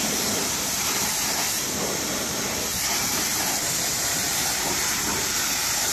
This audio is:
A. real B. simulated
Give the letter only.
B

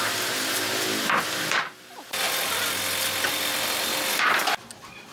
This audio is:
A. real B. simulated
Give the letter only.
A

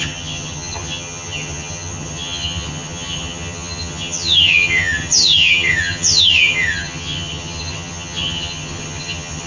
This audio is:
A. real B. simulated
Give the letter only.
B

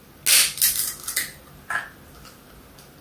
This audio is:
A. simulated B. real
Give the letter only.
B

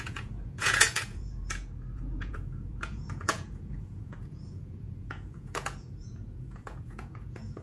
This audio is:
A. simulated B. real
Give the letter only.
A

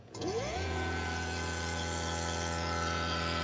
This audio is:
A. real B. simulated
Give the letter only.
B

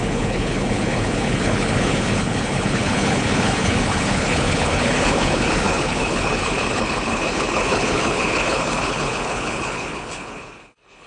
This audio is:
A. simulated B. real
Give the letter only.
A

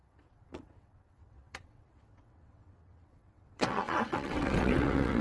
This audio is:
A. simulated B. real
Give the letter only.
A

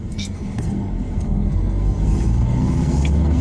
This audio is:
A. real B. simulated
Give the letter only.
B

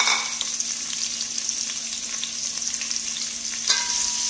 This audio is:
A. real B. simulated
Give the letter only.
A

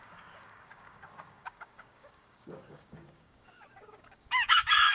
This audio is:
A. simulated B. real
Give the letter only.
A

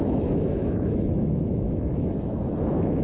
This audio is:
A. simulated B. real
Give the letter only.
A